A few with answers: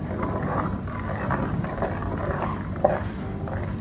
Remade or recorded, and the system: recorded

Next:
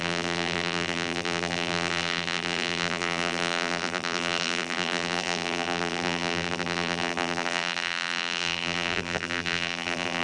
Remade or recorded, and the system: remade, vocoder, BigVGAN v2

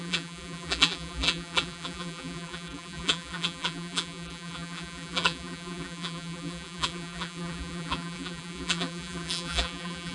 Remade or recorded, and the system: remade, vocoder, BigVGAN v2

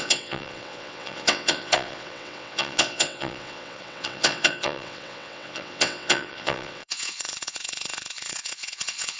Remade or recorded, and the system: remade, vocoder, WaveNeXt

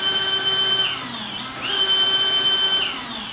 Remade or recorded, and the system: recorded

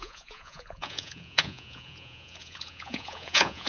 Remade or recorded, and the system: remade, vocoder, Vocos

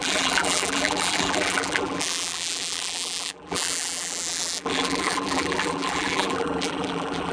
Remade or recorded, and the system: remade, vocoder, BigVGAN v2